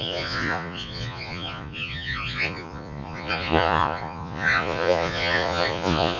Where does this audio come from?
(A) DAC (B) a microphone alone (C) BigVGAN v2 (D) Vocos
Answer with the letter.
D